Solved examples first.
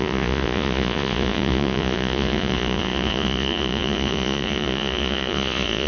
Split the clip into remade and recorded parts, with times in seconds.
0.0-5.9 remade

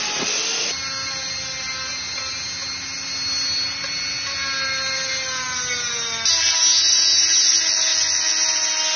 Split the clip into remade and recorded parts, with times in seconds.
0.0-9.0 recorded

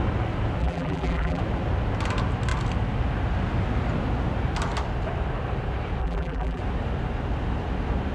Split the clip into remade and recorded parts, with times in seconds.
0.0-0.6 recorded; 0.6-1.4 remade; 1.4-6.0 recorded; 6.0-6.6 remade; 6.6-8.1 recorded

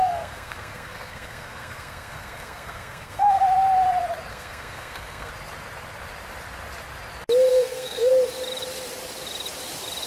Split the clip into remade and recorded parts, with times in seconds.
0.0-3.4 remade; 3.4-4.3 recorded; 4.3-5.3 remade; 5.3-7.5 recorded; 7.5-8.1 remade; 8.1-10.1 recorded

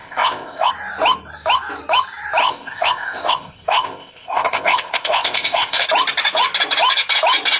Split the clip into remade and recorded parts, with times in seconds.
0.0-0.7 remade; 0.7-2.4 recorded; 2.4-5.9 remade; 5.9-7.6 recorded

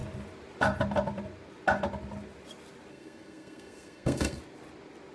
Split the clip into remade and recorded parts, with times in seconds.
0.0-2.9 recorded; 2.9-4.4 remade; 4.4-5.1 recorded